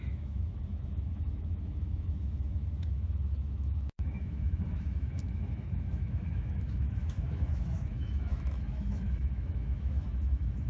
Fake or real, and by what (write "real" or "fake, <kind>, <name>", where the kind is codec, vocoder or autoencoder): fake, autoencoder, DAC-VAE